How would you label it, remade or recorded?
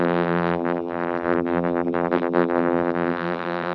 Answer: remade